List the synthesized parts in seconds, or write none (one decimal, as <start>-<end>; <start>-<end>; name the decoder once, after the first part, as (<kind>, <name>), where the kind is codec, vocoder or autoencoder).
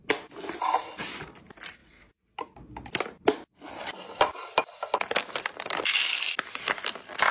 none